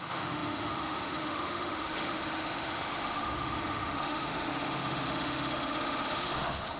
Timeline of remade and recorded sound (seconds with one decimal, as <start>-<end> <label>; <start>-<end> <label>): 0.0-6.8 remade